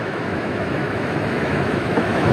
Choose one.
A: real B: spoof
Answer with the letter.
B